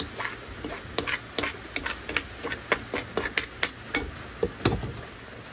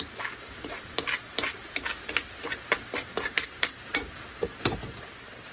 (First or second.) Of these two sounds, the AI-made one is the second